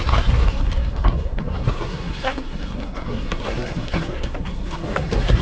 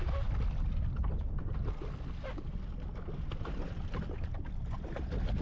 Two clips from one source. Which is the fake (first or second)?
first